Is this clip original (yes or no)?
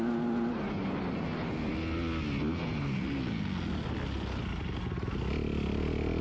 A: yes